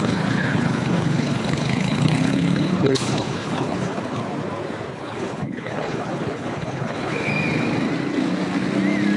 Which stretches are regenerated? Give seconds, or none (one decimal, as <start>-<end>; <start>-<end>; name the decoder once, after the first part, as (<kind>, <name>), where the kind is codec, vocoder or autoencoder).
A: 0.0-4.2 (codec, HILCodec); 4.9-7.3